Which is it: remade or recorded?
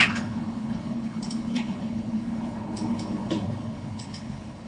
remade